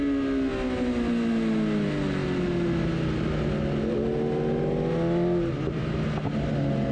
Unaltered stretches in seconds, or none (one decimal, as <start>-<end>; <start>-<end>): 0.0-6.9